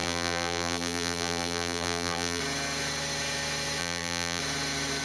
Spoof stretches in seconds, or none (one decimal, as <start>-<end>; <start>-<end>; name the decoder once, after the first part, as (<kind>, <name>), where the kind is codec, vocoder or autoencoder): 0.0-2.4 (vocoder, BigVGAN v2); 3.8-4.4